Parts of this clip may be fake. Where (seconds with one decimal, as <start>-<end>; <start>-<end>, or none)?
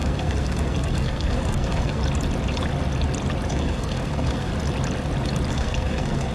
0.0-2.0; 3.5-4.5; 5.5-6.3